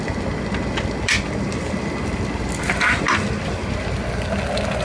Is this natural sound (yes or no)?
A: yes